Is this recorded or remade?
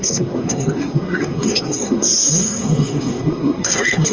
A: remade